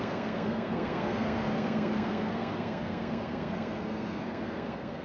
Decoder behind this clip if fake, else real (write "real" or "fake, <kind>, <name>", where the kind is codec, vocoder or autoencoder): fake, codec, SNAC